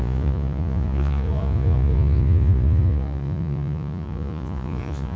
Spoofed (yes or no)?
yes